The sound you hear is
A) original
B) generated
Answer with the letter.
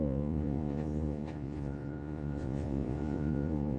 B